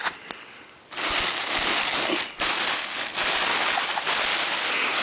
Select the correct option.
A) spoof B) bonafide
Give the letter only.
B